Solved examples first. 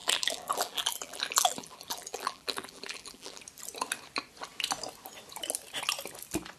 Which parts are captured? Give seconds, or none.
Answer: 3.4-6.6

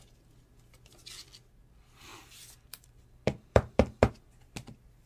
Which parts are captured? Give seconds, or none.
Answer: 0.0-2.1; 4.1-5.1

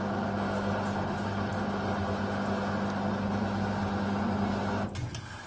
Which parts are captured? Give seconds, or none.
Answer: 0.0-5.5

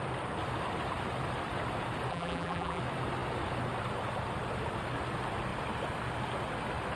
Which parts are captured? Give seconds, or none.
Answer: 0.0-2.1; 2.8-7.0

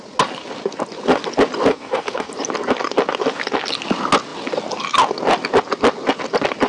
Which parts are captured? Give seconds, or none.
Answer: 0.0-1.7; 2.3-6.7

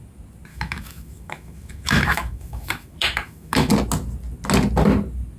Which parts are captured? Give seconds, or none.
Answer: 0.0-0.5; 3.7-5.4

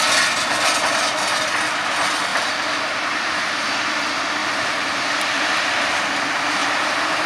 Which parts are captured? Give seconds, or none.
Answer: 0.0-2.3; 3.6-4.4; 5.4-7.3

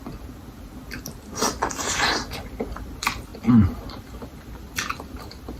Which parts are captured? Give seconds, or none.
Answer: 0.0-2.6; 3.3-4.0